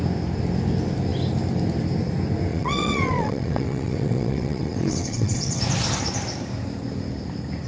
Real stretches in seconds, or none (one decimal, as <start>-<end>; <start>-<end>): 0.0-2.5; 5.6-7.7